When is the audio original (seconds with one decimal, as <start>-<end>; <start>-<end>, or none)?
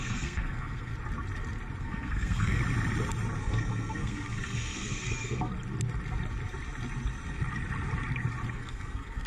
0.9-1.8; 2.6-3.4; 5.5-8.5